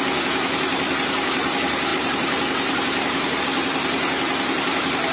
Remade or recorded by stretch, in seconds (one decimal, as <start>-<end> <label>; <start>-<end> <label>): 0.0-5.1 recorded